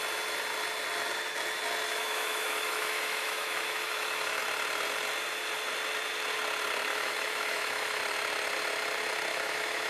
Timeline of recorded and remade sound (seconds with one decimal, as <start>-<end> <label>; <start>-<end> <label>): 0.0-1.9 recorded; 1.9-4.4 remade; 4.4-6.9 recorded; 6.9-8.0 remade; 8.0-9.3 recorded; 9.3-9.9 remade